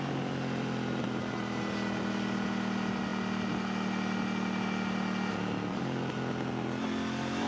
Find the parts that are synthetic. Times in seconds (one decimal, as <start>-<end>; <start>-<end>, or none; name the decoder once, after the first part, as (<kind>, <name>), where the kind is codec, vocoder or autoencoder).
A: none